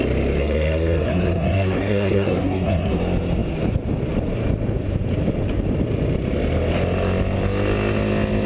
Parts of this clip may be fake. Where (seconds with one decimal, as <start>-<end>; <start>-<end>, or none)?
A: 0.4-3.0